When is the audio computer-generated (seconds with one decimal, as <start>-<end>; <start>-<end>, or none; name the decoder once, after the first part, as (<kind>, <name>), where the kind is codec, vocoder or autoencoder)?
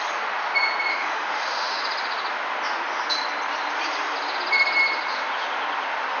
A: 0.9-1.8 (autoencoder, DAC-VAE)